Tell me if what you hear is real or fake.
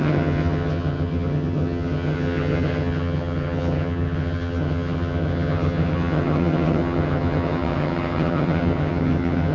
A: fake